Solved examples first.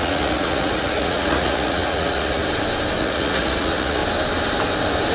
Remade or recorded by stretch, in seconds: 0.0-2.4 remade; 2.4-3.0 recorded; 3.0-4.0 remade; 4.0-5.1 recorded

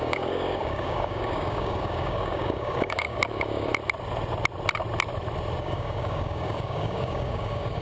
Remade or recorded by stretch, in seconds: 0.0-3.7 remade; 3.7-5.6 recorded; 5.6-7.8 remade

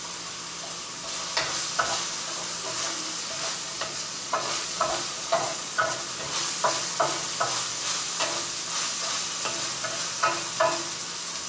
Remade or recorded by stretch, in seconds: 0.0-3.7 recorded; 3.7-6.0 remade; 6.0-11.5 recorded